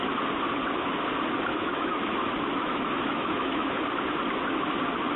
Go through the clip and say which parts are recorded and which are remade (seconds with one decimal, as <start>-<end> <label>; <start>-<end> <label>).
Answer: 0.0-1.5 recorded; 1.5-3.8 remade; 3.8-5.2 recorded